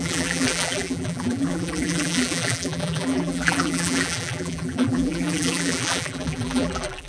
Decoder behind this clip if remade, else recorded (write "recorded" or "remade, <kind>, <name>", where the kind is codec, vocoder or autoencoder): remade, vocoder, BigVGAN v2